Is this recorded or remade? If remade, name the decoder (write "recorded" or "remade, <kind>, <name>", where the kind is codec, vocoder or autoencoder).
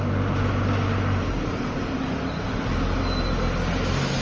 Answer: recorded